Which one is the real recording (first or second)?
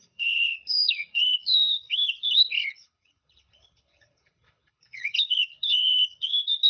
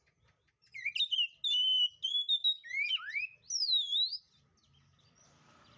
second